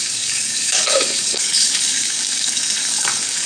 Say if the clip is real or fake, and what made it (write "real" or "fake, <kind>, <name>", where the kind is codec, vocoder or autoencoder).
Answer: fake, codec, DAC